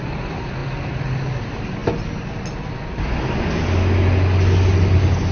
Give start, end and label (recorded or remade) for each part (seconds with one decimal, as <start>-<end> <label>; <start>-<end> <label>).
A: 0.0-0.6 recorded; 0.6-1.1 remade; 1.1-5.3 recorded